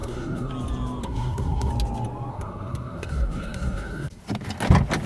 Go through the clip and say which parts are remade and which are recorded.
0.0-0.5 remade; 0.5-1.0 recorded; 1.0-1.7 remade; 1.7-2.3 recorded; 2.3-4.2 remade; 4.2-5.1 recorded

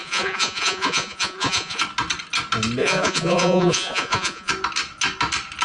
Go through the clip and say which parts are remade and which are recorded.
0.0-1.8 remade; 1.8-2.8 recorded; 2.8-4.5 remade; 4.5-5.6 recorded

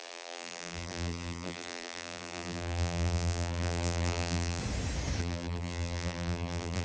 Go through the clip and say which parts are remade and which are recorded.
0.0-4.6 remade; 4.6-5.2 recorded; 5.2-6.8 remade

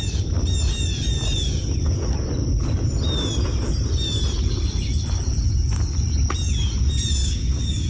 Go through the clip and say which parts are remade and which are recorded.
0.0-7.2 recorded; 7.2-7.9 remade

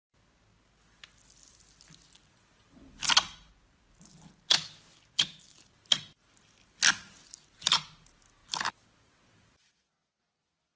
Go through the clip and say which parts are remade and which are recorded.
0.0-10.8 recorded

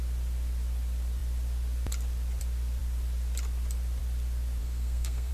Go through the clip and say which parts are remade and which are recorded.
0.0-4.6 recorded; 4.6-5.3 remade

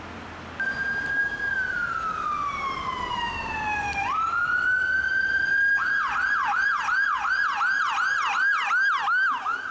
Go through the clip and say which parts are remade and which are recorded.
0.0-9.7 recorded

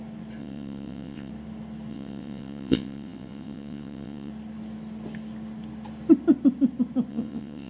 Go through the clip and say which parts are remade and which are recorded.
0.0-0.4 recorded; 0.4-1.3 remade; 1.3-1.9 recorded; 1.9-4.3 remade; 4.3-7.1 recorded; 7.1-7.7 remade